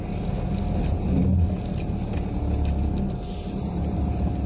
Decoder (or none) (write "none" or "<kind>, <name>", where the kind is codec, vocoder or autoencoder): none